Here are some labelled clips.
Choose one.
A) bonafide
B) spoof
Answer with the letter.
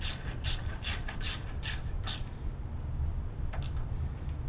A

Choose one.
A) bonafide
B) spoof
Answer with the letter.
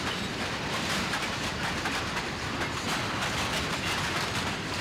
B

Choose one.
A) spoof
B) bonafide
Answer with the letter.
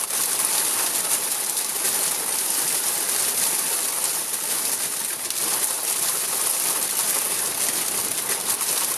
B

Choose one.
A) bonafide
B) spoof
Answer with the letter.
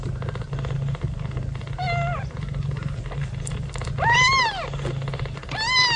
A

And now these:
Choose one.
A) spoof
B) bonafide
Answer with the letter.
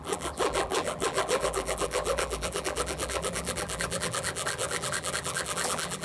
A